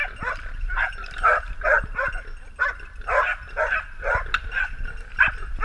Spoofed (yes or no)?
no